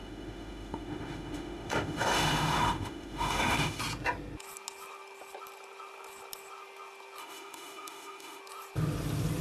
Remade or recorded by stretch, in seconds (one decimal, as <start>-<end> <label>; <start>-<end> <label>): 0.0-3.8 remade; 3.8-7.2 recorded; 7.2-8.4 remade; 8.4-9.4 recorded